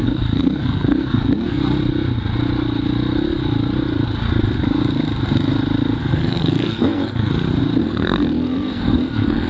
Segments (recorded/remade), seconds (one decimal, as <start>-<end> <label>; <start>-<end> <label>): 0.0-1.6 remade; 1.6-6.0 recorded; 6.0-7.3 remade; 7.3-7.8 recorded; 7.8-9.5 remade